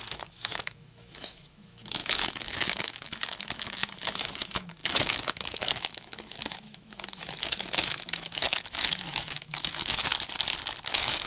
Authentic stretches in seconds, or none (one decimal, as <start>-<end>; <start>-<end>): 10.1-10.9